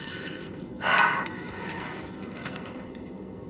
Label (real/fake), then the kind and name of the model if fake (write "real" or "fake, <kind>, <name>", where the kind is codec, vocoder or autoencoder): fake, codec, SNAC